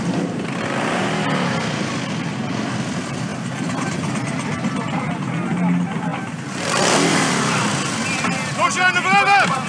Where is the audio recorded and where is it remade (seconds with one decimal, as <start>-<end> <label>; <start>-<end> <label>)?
0.0-6.1 recorded; 6.1-6.8 remade; 6.8-9.7 recorded